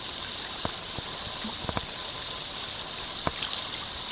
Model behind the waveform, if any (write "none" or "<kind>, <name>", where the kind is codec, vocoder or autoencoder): none